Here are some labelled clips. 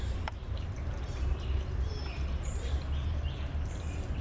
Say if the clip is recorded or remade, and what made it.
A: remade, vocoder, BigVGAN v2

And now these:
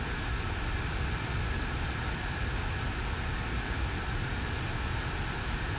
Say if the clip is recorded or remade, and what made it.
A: recorded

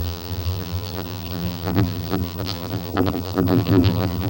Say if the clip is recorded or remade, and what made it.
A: remade, vocoder, BigVGAN v2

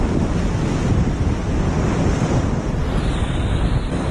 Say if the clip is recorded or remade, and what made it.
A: recorded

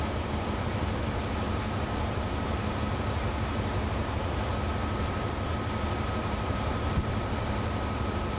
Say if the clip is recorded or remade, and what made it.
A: remade, vocoder, BigVGAN v2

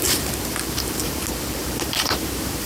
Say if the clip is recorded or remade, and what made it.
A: remade, vocoder, BigVGAN v2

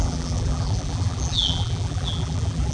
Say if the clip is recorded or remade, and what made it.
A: remade, vocoder, BigVGAN v2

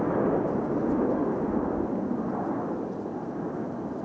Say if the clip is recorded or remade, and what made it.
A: recorded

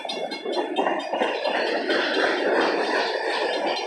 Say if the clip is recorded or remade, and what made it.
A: remade, vocoder, BigVGAN v2